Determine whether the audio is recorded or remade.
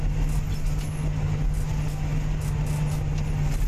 recorded